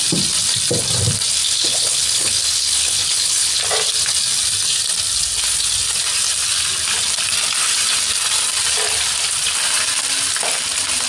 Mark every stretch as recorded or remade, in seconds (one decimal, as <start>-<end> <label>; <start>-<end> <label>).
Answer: 0.0-1.4 recorded; 1.4-3.6 remade; 3.6-11.1 recorded